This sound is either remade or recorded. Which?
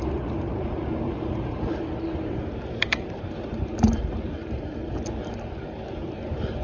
remade